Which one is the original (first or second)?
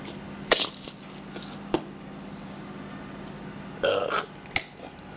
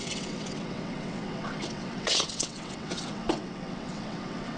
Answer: first